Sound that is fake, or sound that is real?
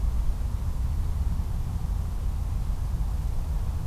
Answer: real